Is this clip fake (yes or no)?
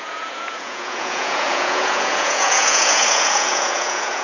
yes